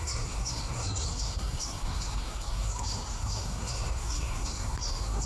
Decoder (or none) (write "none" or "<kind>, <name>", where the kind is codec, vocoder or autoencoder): codec, SNAC